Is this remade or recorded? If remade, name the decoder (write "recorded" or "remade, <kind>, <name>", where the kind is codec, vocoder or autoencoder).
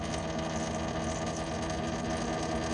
recorded